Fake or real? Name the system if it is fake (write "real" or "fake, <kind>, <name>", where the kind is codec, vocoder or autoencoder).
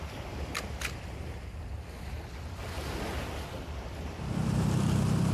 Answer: real